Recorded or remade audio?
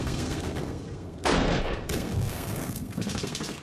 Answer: remade